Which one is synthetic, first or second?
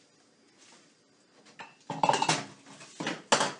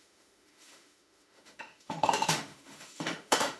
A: second